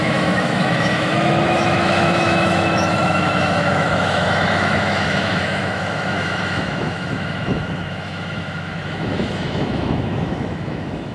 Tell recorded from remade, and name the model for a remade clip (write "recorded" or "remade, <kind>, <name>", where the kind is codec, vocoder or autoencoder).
remade, autoencoder, DAC-VAE